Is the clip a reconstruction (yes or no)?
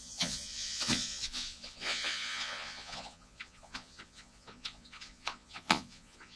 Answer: yes